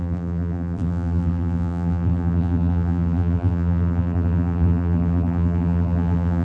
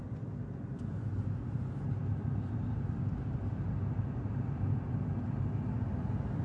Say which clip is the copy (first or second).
first